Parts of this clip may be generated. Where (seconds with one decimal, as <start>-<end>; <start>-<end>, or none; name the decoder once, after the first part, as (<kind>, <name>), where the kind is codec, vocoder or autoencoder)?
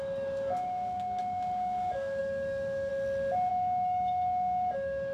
0.0-2.9 (codec, DAC); 3.5-5.1